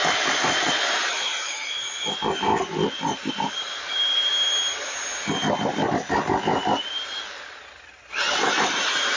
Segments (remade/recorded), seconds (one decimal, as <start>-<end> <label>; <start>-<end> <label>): 0.0-2.5 remade; 2.5-3.3 recorded; 3.3-4.3 remade; 4.3-8.3 recorded; 8.3-9.2 remade